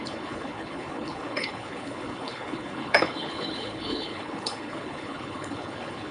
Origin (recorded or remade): remade